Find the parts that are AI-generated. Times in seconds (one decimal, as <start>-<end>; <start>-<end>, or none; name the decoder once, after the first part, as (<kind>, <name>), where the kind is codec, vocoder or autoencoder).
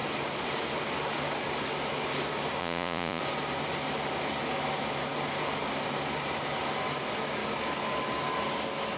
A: 2.6-3.2 (vocoder, Vocos)